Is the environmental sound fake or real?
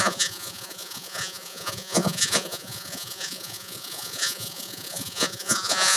fake